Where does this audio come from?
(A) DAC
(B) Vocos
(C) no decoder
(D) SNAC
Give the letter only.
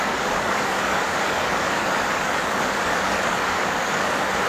A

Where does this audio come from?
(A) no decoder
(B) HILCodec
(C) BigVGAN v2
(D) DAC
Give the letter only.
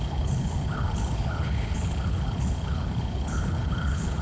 B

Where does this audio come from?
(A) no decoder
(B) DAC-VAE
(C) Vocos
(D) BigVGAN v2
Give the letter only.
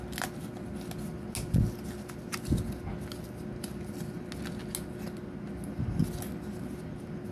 A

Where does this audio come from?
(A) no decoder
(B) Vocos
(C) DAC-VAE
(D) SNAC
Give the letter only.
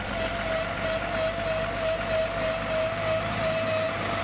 A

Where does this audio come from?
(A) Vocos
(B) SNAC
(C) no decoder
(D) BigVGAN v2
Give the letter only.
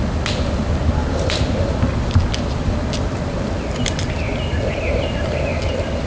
C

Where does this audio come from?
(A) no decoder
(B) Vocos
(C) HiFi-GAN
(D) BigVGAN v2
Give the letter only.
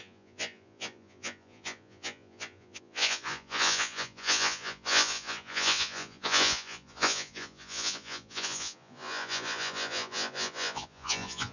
B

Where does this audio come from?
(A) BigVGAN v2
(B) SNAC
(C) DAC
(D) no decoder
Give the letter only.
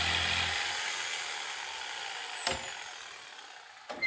D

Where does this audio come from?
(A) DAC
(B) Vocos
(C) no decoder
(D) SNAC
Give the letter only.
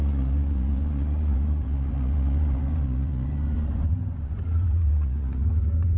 B